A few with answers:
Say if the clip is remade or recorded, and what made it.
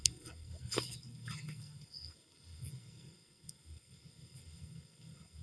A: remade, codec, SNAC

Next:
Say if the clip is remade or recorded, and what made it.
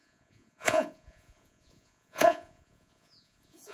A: remade, vocoder, Vocos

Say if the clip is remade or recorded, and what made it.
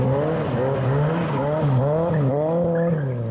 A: recorded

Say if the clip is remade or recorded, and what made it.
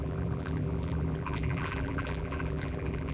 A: remade, vocoder, BigVGAN v2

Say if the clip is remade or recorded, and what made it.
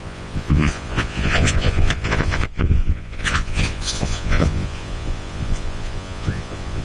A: remade, vocoder, Vocos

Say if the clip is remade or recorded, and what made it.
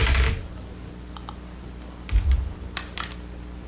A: recorded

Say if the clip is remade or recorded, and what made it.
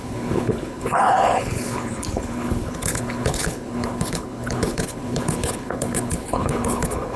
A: remade, codec, HILCodec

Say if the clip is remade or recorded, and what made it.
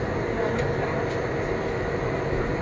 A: recorded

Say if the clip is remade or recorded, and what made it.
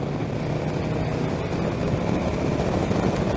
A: recorded